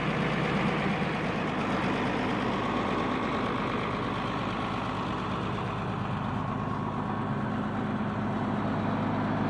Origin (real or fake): real